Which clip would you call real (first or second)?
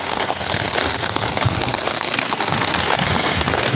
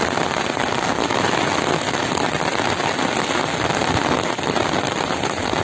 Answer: second